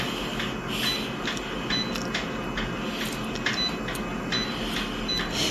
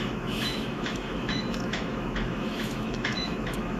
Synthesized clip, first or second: second